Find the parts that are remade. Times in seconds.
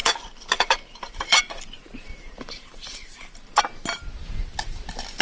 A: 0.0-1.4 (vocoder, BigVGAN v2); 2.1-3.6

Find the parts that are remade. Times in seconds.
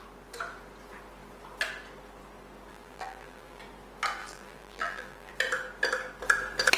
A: 2.7-3.6 (vocoder, BigVGAN v2); 4.2-5.3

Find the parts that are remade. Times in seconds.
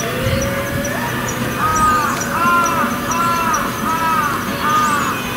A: none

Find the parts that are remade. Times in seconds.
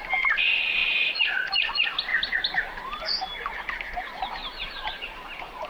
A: 2.1-3.1 (vocoder, BigVGAN v2); 4.4-5.7